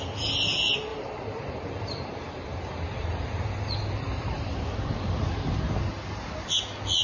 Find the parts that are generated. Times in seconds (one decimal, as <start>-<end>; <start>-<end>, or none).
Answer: 0.9-5.1